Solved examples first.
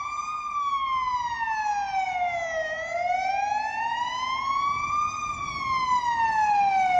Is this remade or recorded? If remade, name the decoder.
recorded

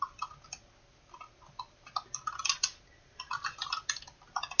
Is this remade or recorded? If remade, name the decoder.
recorded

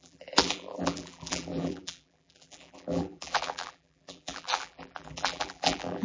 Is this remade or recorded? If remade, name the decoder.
remade, vocoder, BigVGAN v2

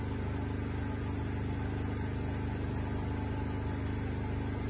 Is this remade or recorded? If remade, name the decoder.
recorded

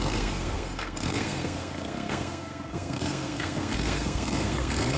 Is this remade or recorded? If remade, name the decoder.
remade, codec, SNAC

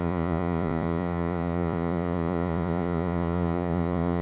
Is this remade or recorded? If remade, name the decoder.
remade, vocoder, Vocos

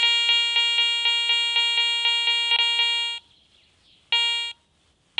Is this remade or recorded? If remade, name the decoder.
recorded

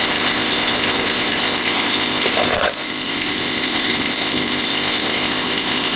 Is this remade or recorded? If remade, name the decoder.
remade, codec, ZipCodec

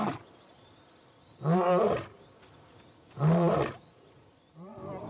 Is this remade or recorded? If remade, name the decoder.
recorded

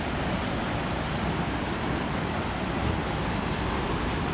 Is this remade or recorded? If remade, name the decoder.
recorded